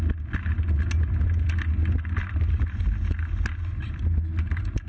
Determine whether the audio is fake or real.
real